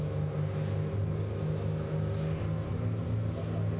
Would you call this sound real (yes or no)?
yes